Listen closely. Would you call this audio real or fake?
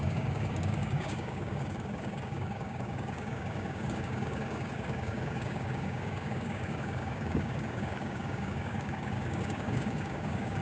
fake